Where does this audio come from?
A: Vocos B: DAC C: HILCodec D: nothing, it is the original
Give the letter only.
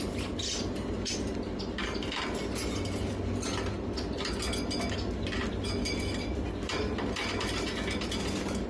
D